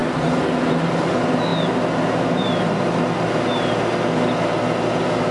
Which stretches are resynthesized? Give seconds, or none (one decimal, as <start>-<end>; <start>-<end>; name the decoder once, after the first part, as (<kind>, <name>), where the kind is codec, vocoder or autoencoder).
none